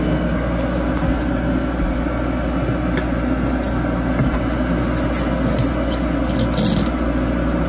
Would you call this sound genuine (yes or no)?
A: yes